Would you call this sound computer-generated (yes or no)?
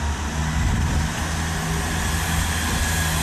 no